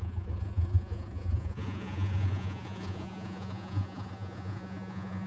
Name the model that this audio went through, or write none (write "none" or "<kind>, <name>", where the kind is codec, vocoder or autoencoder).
vocoder, Vocos